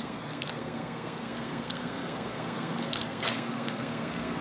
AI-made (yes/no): yes